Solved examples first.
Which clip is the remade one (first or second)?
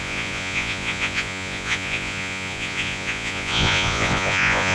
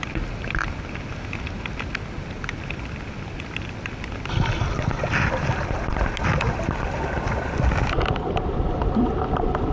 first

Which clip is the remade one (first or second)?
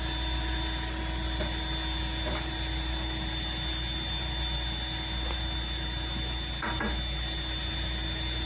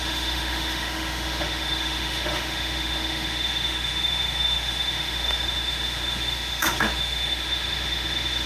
second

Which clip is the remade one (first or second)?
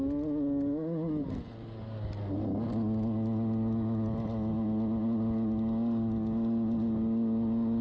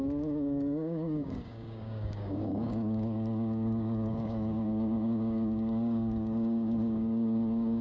second